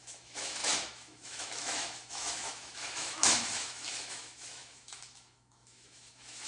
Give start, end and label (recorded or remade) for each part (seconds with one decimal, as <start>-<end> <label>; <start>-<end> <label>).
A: 0.0-6.5 remade